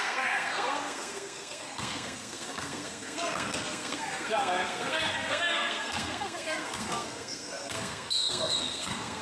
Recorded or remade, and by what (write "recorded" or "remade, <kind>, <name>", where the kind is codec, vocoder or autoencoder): remade, codec, SNAC